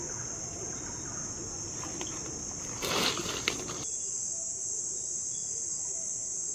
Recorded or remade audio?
recorded